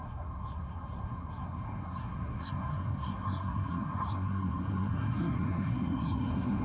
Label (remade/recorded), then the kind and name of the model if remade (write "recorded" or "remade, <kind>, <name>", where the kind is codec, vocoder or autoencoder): remade, codec, SNAC